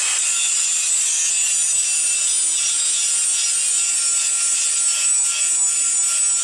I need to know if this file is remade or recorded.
recorded